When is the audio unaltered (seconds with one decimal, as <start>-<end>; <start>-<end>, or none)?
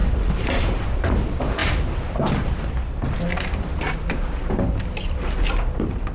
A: 1.1-1.6; 2.7-6.1